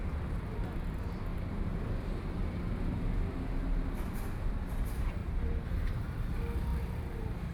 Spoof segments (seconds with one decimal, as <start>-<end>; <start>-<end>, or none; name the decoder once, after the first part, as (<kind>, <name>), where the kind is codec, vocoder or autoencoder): 5.2-5.9 (vocoder, BigVGAN v2); 6.7-7.5